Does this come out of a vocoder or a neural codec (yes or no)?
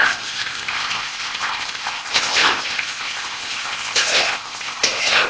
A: yes